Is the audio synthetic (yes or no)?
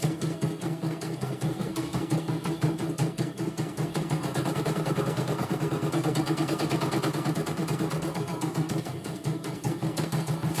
yes